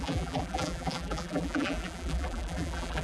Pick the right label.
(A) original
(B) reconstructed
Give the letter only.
B